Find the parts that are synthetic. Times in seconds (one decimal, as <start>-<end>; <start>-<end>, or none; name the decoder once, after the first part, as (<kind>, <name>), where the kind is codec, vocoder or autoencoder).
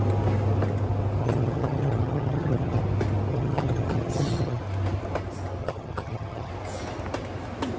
1.2-2.8 (vocoder, HiFi-GAN); 3.3-4.6; 5.6-6.5